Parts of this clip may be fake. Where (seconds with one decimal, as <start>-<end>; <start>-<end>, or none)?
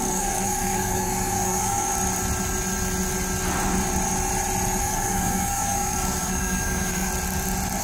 0.0-1.9; 4.8-7.1